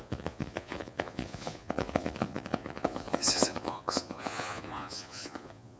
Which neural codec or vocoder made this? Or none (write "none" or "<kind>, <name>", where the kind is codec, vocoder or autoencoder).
vocoder, Vocos